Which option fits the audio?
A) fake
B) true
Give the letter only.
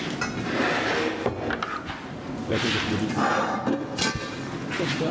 B